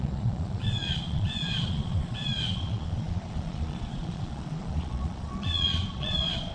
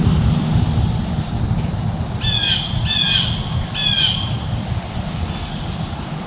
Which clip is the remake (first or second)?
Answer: first